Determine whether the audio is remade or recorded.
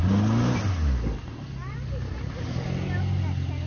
recorded